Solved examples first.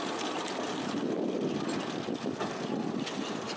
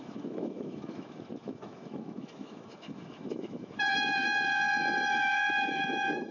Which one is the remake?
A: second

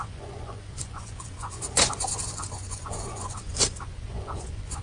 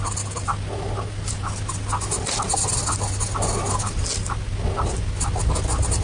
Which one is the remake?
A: first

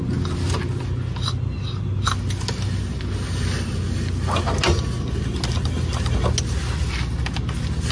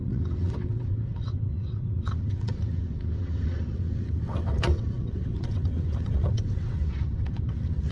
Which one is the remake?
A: second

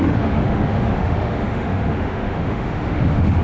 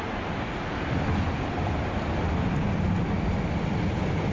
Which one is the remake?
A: first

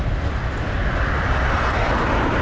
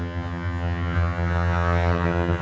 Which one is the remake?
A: second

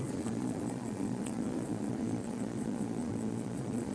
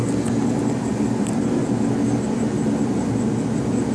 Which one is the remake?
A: first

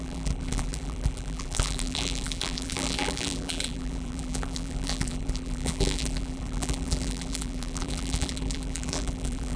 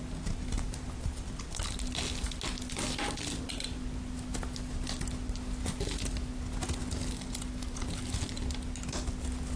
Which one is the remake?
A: first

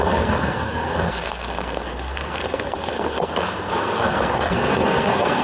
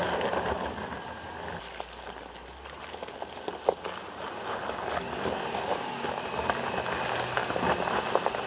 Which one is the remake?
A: first